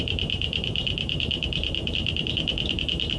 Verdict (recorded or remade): remade